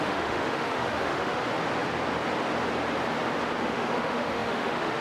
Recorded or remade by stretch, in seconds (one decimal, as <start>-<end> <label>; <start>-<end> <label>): 0.0-1.4 remade; 1.4-3.6 recorded; 3.6-5.0 remade